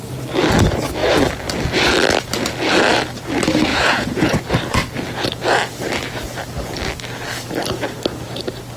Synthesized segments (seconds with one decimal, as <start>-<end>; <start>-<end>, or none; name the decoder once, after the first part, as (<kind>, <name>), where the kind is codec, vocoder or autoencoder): 3.7-4.4 (vocoder, Vocos)